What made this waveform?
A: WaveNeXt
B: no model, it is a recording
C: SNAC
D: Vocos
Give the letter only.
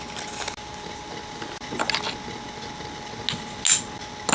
B